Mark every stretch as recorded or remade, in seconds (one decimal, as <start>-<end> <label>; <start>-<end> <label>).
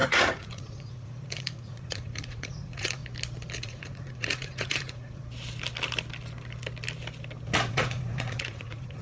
0.0-3.0 remade; 3.0-3.6 recorded; 3.6-5.2 remade; 5.2-7.7 recorded; 7.7-9.0 remade